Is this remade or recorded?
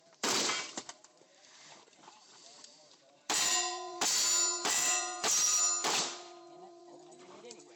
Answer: remade